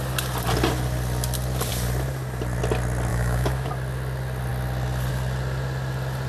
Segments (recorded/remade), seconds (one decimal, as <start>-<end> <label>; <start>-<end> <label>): 0.0-3.1 recorded; 3.1-3.7 remade; 3.7-6.3 recorded